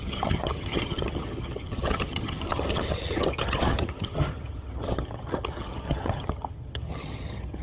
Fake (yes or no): yes